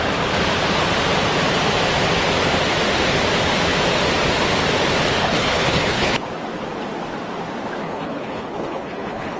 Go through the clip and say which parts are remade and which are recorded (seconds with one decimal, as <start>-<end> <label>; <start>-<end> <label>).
0.0-5.2 recorded; 5.2-6.2 remade; 6.2-7.8 recorded; 7.8-9.4 remade